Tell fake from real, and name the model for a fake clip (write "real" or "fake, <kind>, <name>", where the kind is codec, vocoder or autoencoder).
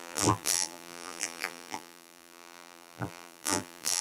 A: fake, vocoder, BigVGAN v2